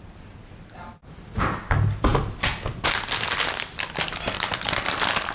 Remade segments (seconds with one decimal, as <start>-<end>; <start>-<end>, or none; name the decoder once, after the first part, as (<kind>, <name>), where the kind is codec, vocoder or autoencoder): none